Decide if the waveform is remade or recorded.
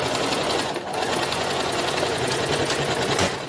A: remade